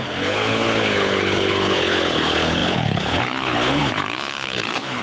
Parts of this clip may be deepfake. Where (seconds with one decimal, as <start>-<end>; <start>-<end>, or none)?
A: 0.0-5.0